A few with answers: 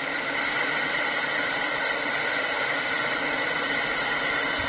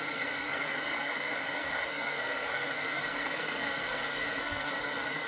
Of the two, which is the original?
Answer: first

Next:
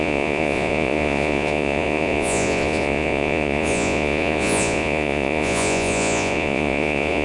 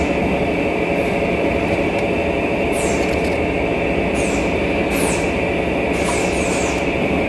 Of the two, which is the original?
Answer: second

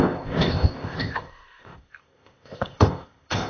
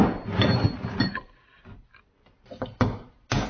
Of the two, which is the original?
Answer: second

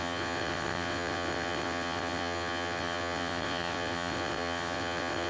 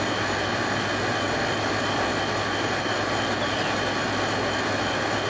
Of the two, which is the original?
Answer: second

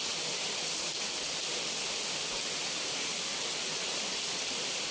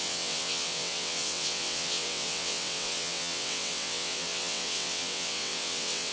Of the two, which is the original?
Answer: first